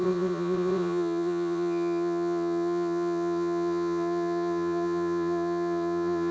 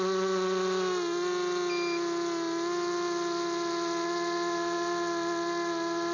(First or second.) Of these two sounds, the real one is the second